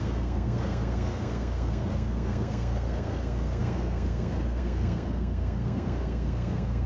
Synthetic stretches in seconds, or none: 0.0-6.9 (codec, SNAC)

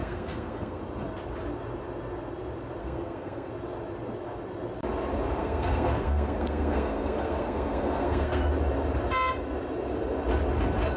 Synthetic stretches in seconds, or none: 0.0-0.8 (codec, SNAC); 2.8-3.5; 5.4-8.5

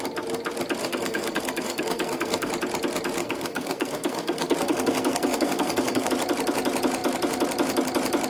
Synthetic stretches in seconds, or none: 0.8-2.5 (codec, SNAC); 3.2-6.1

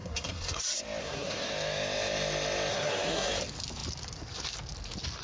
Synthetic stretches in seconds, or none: 0.0-0.6 (codec, SNAC); 1.0-1.5; 2.7-3.3

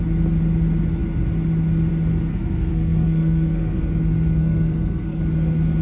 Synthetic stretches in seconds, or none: 2.3-3.8 (codec, SNAC); 4.4-5.2

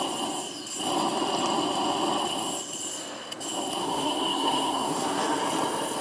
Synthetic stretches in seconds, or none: 3.8-5.2 (codec, SNAC)

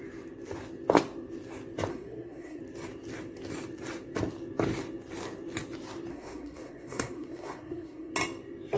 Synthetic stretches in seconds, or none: 1.9-2.6 (codec, SNAC); 6.1-8.1